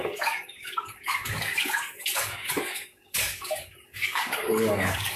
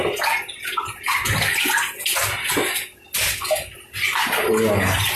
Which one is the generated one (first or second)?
first